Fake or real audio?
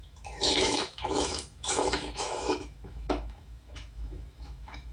fake